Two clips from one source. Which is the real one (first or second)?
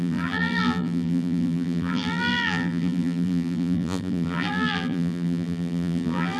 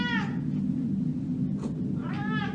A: second